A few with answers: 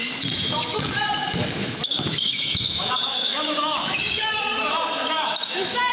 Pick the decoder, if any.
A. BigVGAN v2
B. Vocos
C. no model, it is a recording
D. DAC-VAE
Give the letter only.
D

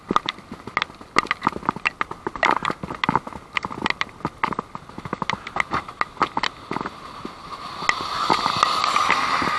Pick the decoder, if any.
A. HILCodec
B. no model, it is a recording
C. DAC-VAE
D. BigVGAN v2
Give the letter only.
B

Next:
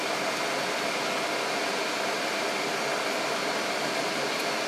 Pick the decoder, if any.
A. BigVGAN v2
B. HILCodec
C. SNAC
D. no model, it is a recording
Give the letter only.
D